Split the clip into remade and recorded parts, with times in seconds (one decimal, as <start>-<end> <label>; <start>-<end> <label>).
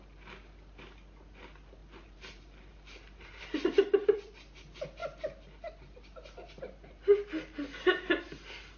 0.0-1.8 recorded; 1.8-3.4 remade; 3.4-8.8 recorded